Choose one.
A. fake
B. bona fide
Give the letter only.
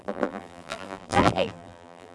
A